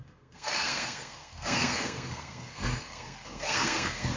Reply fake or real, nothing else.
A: fake